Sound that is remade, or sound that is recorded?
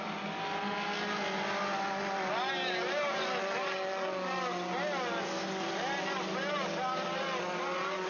recorded